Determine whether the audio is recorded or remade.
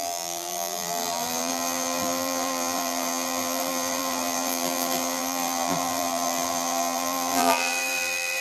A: remade